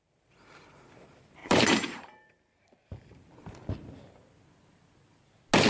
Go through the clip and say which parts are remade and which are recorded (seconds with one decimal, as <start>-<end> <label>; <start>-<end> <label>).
0.0-1.4 recorded; 1.4-3.7 remade; 3.7-5.7 recorded